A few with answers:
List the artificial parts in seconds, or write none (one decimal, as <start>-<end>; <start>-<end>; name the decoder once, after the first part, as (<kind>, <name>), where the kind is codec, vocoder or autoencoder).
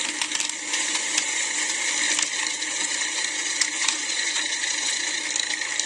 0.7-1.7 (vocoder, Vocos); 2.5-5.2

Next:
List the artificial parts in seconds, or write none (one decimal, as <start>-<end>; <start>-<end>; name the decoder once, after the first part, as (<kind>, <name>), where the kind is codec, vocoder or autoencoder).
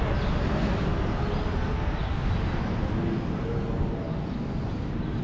none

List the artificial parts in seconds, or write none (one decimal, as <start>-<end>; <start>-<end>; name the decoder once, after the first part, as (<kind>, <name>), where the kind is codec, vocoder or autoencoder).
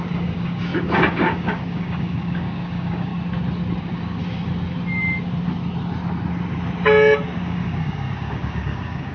0.0-3.1 (codec, DAC); 3.8-4.2; 7.4-9.1